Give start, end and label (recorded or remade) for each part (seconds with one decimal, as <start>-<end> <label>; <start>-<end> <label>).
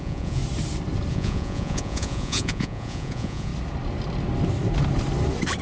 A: 0.0-0.4 remade; 0.4-1.1 recorded; 1.1-3.5 remade; 3.5-5.6 recorded